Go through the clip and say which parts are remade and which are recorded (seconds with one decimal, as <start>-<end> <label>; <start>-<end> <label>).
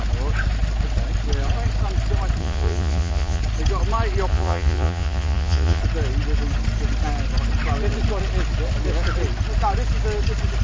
0.0-2.4 recorded; 2.4-3.4 remade; 3.4-4.3 recorded; 4.3-5.8 remade; 5.8-10.6 recorded